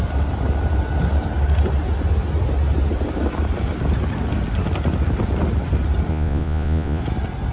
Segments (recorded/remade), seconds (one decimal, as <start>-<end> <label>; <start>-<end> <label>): 0.0-6.1 recorded; 6.1-7.0 remade; 7.0-7.5 recorded